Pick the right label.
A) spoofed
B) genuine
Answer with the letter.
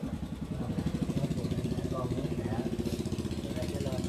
B